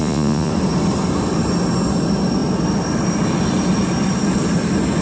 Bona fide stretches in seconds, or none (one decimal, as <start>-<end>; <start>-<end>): 0.5-5.0